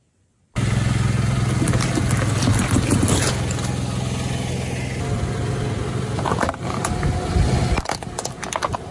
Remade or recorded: recorded